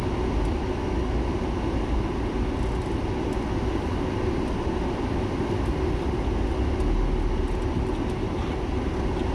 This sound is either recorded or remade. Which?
recorded